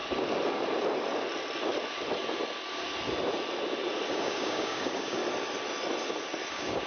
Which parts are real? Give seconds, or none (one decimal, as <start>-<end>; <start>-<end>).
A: 0.0-4.1; 5.2-6.5